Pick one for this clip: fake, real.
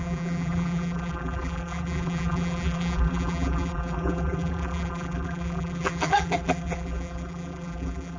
fake